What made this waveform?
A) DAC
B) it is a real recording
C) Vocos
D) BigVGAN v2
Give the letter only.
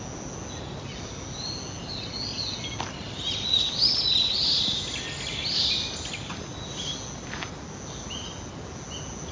B